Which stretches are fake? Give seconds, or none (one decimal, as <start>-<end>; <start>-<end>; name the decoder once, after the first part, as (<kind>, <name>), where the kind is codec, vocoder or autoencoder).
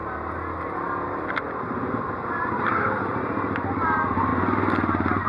2.0-4.3 (vocoder, BigVGAN v2)